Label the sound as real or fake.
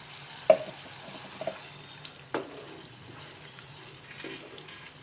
real